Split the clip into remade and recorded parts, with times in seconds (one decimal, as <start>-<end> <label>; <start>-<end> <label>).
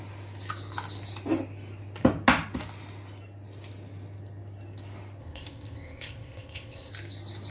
0.0-5.2 recorded; 5.2-6.9 remade; 6.9-7.5 recorded